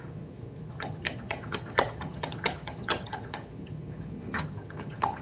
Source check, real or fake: fake